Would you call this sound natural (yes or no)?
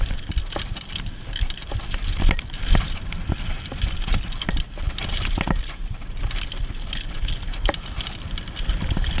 yes